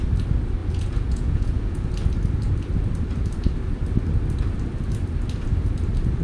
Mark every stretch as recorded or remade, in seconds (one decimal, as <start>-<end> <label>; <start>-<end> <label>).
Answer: 0.0-0.6 recorded; 0.6-1.9 remade; 1.9-6.2 recorded